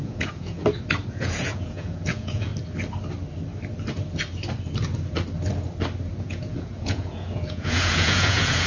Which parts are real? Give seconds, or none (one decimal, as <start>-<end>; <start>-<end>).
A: 0.6-1.1; 2.5-6.2